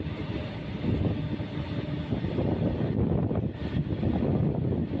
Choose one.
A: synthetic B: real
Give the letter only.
B